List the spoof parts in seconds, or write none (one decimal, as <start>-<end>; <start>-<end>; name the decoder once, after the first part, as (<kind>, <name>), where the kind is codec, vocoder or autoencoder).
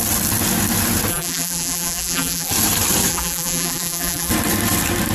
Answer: 1.1-2.5 (vocoder, BigVGAN v2); 3.1-4.3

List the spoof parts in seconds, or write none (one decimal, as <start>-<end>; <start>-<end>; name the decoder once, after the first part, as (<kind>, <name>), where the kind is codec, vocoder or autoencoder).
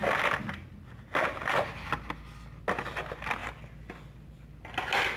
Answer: none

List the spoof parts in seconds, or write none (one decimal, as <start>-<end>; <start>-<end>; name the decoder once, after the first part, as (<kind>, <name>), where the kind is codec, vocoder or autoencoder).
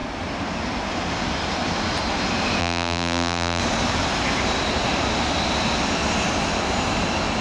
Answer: 2.6-3.6 (vocoder, BigVGAN v2)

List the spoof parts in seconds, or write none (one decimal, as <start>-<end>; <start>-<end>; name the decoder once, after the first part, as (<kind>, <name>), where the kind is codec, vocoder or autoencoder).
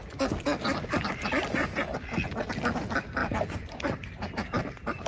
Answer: 3.2-5.1 (vocoder, BigVGAN v2)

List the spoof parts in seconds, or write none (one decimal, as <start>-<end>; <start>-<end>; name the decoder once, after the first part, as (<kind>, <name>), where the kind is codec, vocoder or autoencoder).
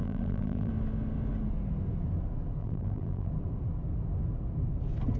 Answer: 0.0-0.7 (vocoder, BigVGAN v2); 2.6-3.3